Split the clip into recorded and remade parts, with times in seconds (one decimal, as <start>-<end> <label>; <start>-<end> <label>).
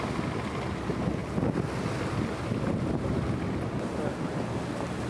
0.0-5.1 recorded